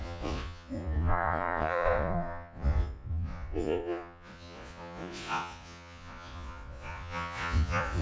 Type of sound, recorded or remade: remade